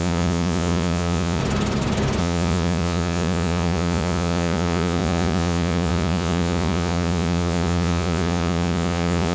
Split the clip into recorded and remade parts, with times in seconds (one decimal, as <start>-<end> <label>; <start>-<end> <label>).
0.0-1.4 remade; 1.4-2.2 recorded; 2.2-9.3 remade